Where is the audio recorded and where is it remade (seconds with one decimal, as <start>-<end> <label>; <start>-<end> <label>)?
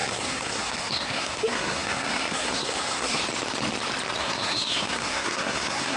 0.0-3.2 remade; 3.2-4.2 recorded; 4.2-6.0 remade